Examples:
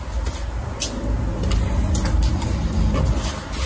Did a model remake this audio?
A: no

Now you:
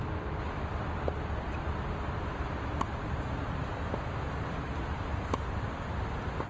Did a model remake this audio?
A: no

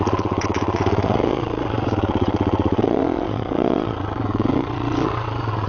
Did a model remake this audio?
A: yes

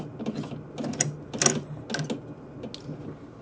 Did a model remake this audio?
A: no